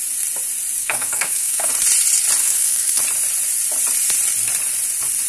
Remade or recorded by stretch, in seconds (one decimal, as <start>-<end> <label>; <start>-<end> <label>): 0.0-0.8 recorded; 0.8-1.7 remade; 1.7-2.4 recorded; 2.4-3.0 remade; 3.0-5.3 recorded